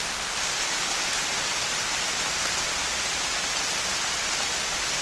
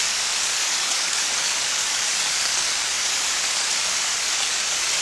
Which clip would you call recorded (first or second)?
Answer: first